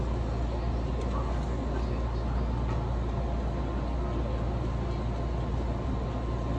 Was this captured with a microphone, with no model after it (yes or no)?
yes